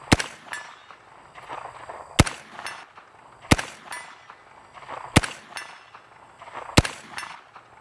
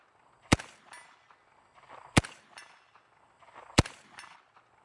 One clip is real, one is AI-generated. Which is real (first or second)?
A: first